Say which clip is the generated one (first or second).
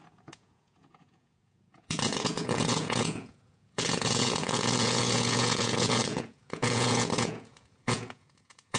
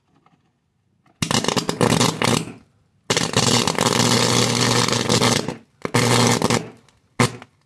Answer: first